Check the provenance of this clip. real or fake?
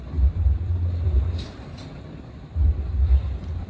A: fake